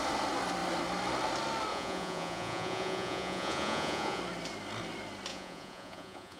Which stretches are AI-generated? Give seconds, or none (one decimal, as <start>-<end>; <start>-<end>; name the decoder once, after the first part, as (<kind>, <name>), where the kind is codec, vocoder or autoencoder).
1.7-4.2 (vocoder, Vocos); 5.3-6.4

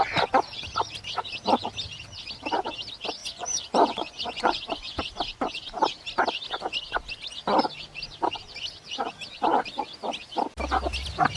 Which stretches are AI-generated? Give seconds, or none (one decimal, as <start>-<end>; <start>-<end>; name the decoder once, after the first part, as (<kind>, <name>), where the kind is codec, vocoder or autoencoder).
3.2-5.0 (vocoder, Vocos)

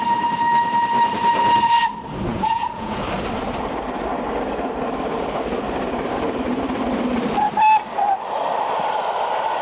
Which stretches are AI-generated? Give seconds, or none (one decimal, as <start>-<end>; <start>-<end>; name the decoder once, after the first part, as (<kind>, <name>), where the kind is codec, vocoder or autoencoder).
2.3-3.0 (vocoder, Vocos)

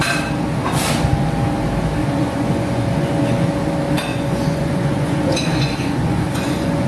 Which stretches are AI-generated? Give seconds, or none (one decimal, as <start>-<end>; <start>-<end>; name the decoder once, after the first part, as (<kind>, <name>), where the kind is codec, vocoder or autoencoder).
2.0-3.6 (vocoder, Vocos); 4.1-6.9

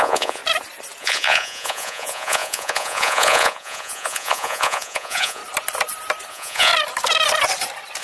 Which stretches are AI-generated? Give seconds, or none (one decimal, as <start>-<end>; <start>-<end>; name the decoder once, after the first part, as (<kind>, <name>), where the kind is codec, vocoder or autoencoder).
0.0-0.4 (vocoder, Vocos); 1.0-5.4; 6.3-6.7